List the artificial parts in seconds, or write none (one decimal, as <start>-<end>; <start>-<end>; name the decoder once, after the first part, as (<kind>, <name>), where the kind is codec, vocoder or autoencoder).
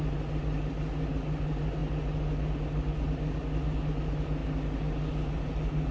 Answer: none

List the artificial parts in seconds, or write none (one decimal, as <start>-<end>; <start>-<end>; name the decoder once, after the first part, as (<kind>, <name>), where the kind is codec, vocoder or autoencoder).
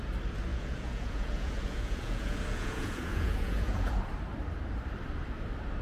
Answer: 0.5-4.0 (vocoder, Vocos)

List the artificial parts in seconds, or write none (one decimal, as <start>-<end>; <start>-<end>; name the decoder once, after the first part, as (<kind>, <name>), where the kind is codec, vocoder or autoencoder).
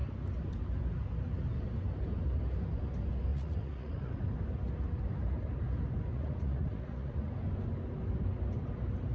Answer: 3.3-4.1 (vocoder, Vocos); 6.1-7.3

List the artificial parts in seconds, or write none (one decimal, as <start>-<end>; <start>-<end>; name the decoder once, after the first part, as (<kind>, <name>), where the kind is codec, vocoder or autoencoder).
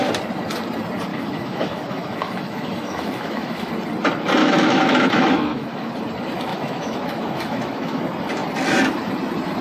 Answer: 1.1-3.7 (autoencoder, DAC-VAE); 4.4-5.9; 6.5-8.0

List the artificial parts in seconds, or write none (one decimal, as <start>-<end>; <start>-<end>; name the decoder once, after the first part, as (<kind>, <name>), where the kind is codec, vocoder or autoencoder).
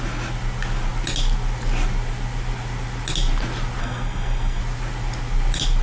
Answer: 3.8-4.6 (codec, SNAC)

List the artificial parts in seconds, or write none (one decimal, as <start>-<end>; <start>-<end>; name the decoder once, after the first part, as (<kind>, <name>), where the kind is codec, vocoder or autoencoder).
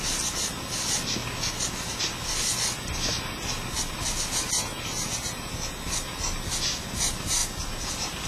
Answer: none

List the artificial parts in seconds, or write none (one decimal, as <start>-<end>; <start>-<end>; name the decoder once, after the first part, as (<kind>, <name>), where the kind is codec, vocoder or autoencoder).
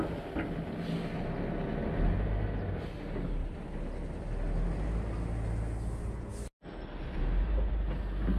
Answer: none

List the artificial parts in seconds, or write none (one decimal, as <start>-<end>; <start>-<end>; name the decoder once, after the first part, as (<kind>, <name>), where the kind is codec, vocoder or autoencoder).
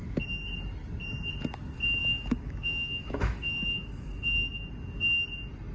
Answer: 2.0-4.7 (autoencoder, DAC-VAE)